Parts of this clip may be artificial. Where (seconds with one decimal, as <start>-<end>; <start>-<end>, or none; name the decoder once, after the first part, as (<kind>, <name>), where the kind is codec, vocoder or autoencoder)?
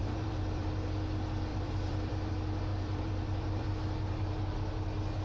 0.0-0.7 (vocoder, BigVGAN v2); 1.5-2.3; 2.7-3.7